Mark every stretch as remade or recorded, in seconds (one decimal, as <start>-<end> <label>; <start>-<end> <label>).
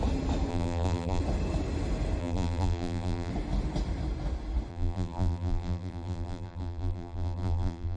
0.0-0.5 recorded; 0.5-1.2 remade; 1.2-2.2 recorded; 2.2-3.3 remade; 3.3-4.7 recorded; 4.7-8.0 remade